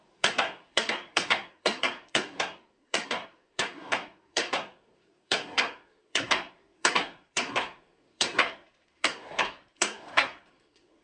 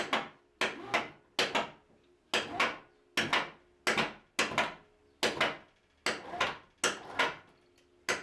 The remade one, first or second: first